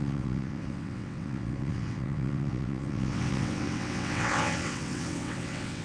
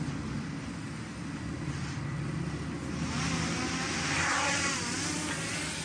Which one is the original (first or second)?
second